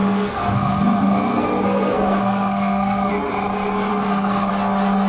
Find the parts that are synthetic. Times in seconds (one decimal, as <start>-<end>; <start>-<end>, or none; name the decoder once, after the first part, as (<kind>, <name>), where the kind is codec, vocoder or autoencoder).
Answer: 0.0-3.1 (codec, SNAC); 3.9-4.5